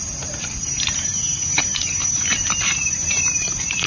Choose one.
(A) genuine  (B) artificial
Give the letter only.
A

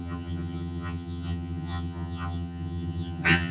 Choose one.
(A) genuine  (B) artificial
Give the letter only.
B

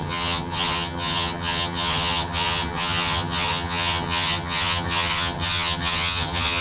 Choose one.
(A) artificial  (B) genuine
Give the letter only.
A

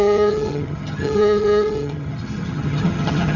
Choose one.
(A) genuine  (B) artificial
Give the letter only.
B